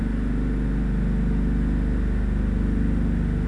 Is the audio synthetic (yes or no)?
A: no